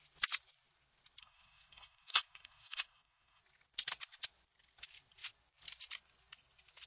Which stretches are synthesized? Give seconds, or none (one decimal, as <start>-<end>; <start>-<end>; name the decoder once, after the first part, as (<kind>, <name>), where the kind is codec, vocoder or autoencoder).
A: 1.2-3.4 (codec, SNAC)